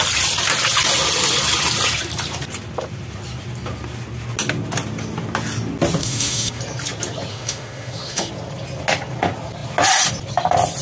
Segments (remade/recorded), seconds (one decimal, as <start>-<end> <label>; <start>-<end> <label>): 0.0-6.0 recorded; 6.0-6.6 remade; 6.6-7.3 recorded; 7.3-8.3 remade; 8.3-10.8 recorded